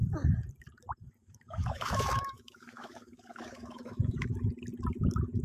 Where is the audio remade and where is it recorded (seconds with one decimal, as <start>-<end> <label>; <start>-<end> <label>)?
0.0-1.2 recorded; 1.2-4.4 remade; 4.4-5.4 recorded